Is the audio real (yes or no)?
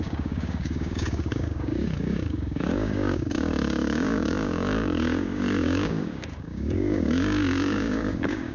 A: no